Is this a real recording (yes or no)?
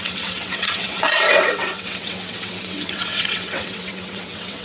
no